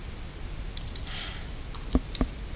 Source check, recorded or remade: recorded